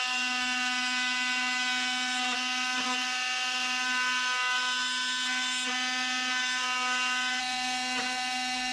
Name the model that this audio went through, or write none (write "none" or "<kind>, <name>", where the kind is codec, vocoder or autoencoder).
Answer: none